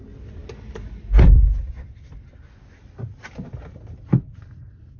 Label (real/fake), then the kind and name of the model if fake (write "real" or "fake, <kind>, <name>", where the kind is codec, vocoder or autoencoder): real